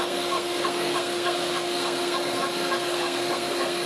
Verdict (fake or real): fake